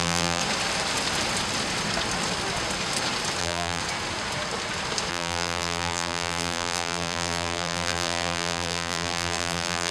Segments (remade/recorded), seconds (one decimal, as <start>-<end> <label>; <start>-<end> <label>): 0.0-0.4 remade; 0.4-3.4 recorded; 3.4-3.8 remade; 3.8-5.1 recorded; 5.1-9.9 remade